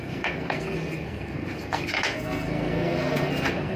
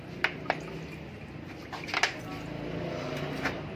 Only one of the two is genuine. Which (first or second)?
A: second